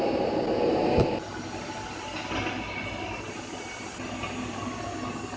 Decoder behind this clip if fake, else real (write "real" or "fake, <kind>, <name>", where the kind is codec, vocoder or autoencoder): real